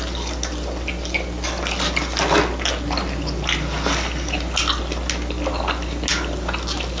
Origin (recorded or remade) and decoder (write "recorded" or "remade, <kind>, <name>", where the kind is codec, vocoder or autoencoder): recorded